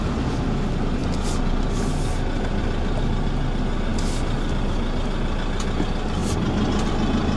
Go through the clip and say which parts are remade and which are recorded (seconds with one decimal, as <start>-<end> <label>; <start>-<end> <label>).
0.0-7.4 recorded